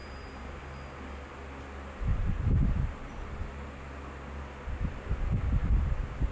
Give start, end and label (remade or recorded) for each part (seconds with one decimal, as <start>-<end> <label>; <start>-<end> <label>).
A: 0.0-0.6 remade; 0.6-2.1 recorded; 2.1-3.3 remade; 3.3-6.3 recorded

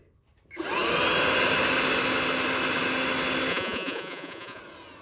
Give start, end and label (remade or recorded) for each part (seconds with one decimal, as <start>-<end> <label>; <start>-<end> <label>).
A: 0.0-3.5 recorded; 3.5-4.6 remade; 4.6-5.0 recorded

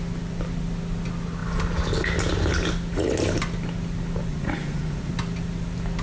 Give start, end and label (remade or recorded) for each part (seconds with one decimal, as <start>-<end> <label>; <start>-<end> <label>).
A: 0.0-4.3 recorded; 4.3-5.1 remade; 5.1-6.0 recorded

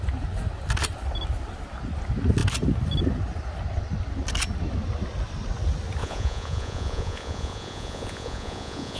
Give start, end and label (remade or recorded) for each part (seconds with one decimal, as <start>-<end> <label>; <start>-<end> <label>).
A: 0.0-6.0 recorded; 6.0-9.0 remade

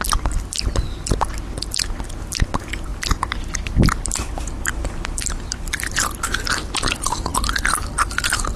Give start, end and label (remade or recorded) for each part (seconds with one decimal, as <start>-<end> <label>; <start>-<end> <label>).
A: 0.0-8.6 recorded

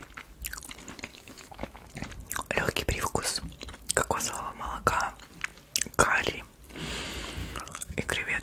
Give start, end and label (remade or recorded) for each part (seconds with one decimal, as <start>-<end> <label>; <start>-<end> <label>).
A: 0.0-1.1 recorded; 1.1-1.9 remade; 1.9-7.4 recorded; 7.4-8.4 remade

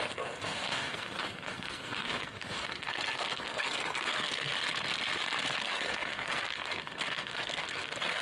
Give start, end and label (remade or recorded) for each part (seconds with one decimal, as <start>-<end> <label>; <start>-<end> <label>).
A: 0.0-4.5 remade; 4.5-5.6 recorded; 5.6-8.2 remade